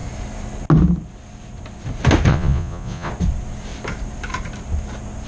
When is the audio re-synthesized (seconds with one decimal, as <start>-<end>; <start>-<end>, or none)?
2.3-3.1